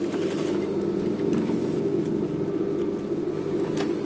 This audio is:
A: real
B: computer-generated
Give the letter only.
A